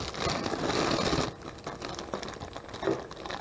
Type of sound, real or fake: real